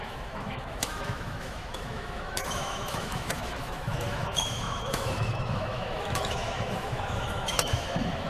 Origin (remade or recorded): remade